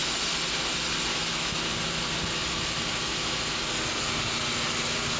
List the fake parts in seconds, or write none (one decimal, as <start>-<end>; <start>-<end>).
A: 1.1-1.7